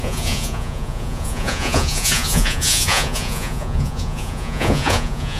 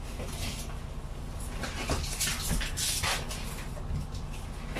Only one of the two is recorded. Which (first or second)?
second